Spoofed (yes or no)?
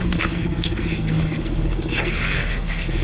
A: yes